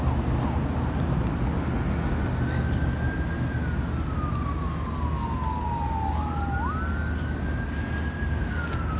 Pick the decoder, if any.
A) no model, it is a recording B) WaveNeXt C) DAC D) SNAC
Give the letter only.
A